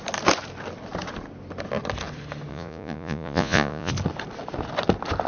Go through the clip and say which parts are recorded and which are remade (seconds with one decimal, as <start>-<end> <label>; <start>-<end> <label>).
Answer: 0.0-2.5 recorded; 2.5-3.9 remade; 3.9-5.3 recorded